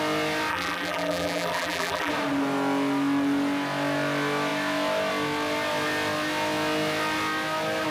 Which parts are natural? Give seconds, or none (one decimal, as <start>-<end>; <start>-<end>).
0.0-0.5; 2.1-7.9